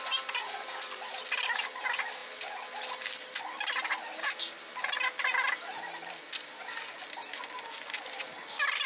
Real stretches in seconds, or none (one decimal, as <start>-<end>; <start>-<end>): 0.0-8.9

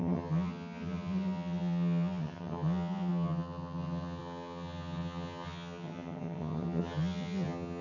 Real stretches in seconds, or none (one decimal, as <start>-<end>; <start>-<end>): none

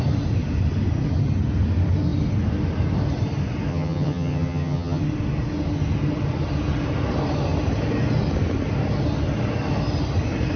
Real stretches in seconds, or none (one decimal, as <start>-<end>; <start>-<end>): 0.0-3.7; 5.0-10.6